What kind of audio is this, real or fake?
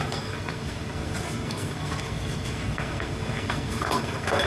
fake